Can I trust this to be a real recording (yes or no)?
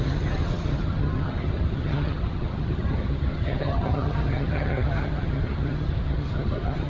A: no